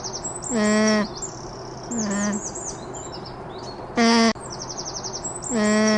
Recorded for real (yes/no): yes